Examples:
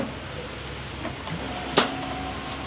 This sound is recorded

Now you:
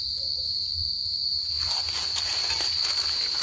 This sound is recorded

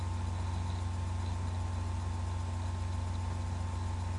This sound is recorded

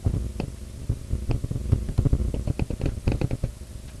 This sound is recorded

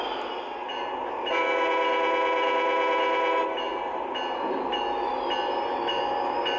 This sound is recorded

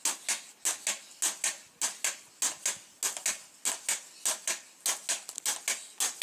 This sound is recorded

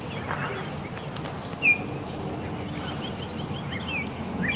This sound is recorded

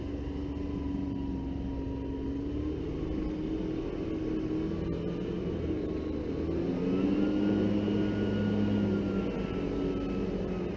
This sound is recorded